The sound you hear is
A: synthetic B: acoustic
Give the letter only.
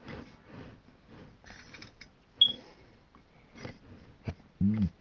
B